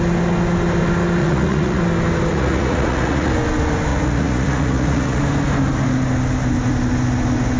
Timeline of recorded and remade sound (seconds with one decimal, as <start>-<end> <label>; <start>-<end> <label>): 0.0-1.2 recorded; 1.2-1.8 remade; 1.8-2.3 recorded; 2.3-3.3 remade; 3.3-3.9 recorded; 3.9-5.2 remade; 5.2-7.6 recorded